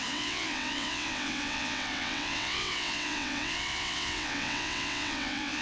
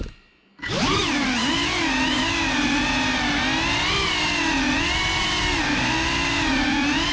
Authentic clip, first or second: second